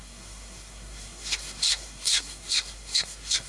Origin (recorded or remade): remade